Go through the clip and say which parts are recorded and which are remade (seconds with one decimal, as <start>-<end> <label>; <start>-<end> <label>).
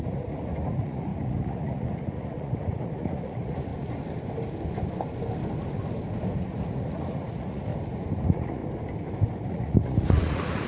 0.0-3.7 remade; 3.7-6.4 recorded; 6.4-7.7 remade; 7.7-8.2 recorded; 8.2-8.6 remade; 8.6-9.5 recorded; 9.5-10.7 remade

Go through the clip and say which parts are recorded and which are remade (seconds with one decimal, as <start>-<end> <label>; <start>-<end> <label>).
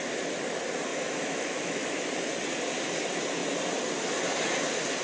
0.0-0.9 recorded; 0.9-2.1 remade; 2.1-5.0 recorded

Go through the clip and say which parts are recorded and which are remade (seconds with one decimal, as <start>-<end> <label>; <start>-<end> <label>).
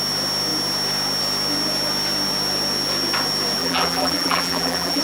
0.0-3.6 recorded; 3.6-5.0 remade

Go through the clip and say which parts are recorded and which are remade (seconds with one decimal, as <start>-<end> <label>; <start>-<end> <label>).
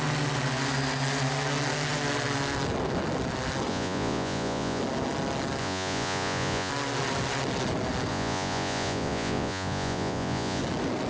0.0-3.7 recorded; 3.7-4.8 remade; 4.8-5.6 recorded; 5.6-6.7 remade; 6.7-8.1 recorded; 8.1-10.6 remade; 10.6-11.1 recorded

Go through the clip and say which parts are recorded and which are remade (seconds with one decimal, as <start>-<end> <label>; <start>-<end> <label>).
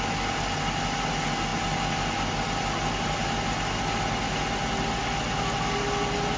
0.0-6.4 recorded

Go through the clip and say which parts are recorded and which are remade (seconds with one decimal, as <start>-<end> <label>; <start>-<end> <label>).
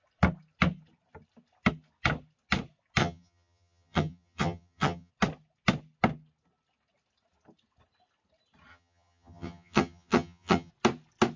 0.0-3.0 recorded; 3.0-5.1 remade; 5.1-8.7 recorded; 8.7-10.7 remade; 10.7-11.4 recorded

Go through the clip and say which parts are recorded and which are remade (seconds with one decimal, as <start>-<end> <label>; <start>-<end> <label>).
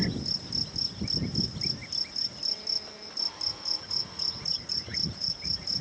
0.0-3.5 recorded; 3.5-5.8 remade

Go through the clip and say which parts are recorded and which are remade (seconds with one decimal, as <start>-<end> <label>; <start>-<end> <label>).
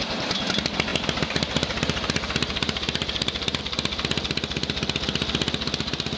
0.0-0.9 recorded; 0.9-3.6 remade; 3.6-6.2 recorded